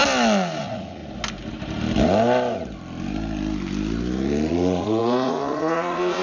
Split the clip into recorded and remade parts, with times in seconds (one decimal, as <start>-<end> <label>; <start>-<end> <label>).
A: 0.0-0.6 recorded; 0.6-1.0 remade; 1.0-4.5 recorded; 4.5-6.2 remade